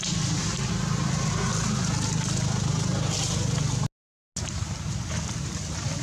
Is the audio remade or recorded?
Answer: recorded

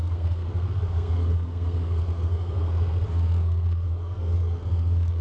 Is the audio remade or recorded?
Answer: remade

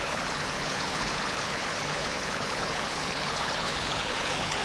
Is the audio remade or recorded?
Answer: remade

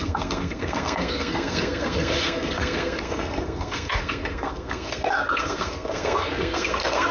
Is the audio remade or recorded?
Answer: remade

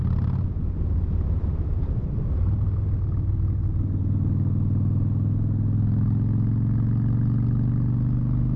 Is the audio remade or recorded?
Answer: recorded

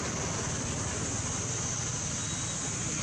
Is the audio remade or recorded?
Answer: recorded